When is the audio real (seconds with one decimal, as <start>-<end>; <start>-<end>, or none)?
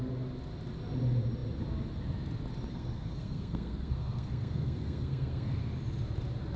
0.0-2.7; 5.6-6.6